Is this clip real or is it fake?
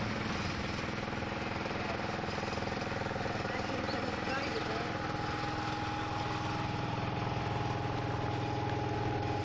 real